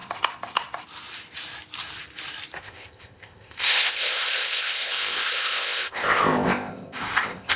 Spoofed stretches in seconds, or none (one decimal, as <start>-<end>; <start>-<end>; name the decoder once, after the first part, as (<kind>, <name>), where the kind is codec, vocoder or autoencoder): 2.6-7.6 (codec, ZipCodec)